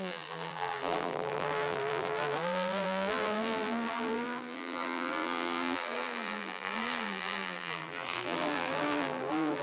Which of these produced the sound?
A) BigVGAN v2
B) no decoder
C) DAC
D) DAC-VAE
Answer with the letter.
A